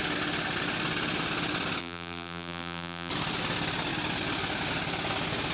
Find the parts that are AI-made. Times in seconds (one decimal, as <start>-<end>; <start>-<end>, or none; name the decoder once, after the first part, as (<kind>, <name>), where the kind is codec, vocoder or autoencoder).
1.8-3.1 (vocoder, BigVGAN v2)